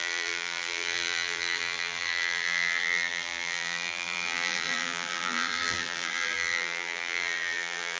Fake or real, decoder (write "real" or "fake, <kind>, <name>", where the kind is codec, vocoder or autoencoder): fake, vocoder, BigVGAN v2